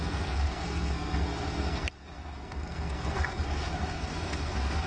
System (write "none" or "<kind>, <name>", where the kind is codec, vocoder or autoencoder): codec, SNAC